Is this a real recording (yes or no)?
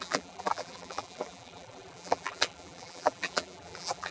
no